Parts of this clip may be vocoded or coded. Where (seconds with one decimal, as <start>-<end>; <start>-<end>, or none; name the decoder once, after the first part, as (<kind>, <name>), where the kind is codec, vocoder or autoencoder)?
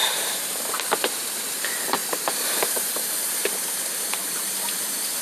0.0-0.8 (vocoder, BigVGAN v2); 2.0-5.2